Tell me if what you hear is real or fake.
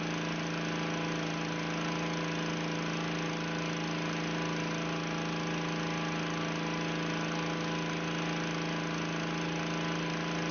real